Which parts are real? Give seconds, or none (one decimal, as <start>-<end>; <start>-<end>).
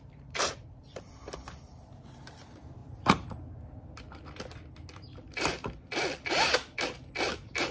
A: 2.8-7.7